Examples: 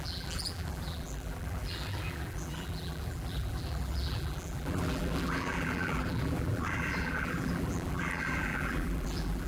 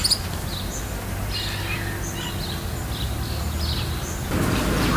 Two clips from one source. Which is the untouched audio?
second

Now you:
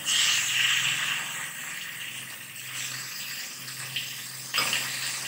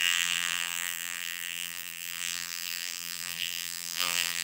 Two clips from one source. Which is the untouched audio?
first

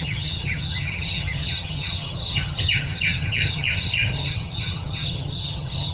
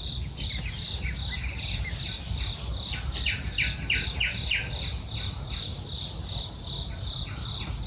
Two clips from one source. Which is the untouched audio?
second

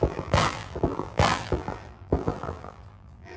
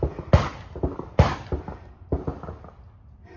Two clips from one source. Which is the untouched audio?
second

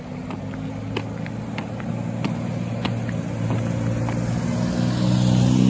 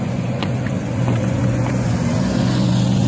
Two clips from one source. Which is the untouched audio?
first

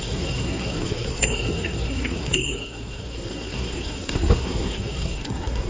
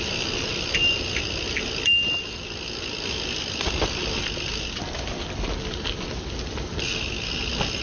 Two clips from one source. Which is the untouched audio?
second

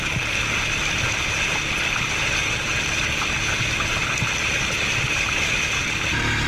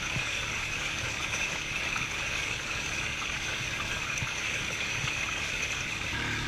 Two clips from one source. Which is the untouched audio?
first